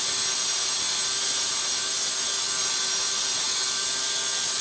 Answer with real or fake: real